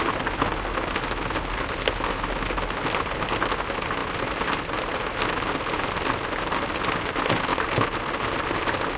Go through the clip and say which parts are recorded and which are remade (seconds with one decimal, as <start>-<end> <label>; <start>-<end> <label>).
0.0-9.0 recorded